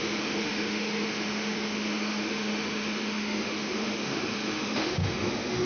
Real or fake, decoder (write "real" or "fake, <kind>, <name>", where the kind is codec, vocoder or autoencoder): fake, autoencoder, DAC-VAE